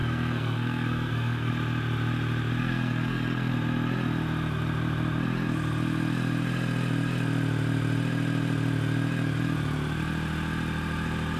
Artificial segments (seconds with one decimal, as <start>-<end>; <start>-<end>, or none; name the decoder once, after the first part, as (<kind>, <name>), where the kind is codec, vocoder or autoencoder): 0.0-1.5 (codec, SNAC); 2.6-3.5